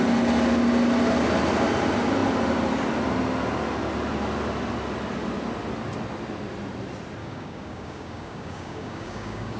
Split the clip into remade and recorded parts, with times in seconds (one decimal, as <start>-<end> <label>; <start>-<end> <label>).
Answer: 0.0-7.2 recorded; 7.2-9.6 remade